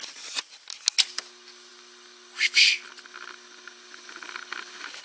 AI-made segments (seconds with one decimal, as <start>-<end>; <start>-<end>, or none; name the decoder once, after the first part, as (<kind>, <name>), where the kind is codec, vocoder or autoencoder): none